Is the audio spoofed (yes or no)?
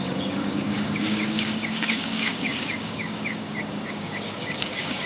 yes